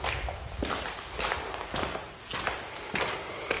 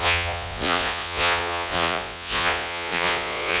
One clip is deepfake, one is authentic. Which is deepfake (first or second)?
second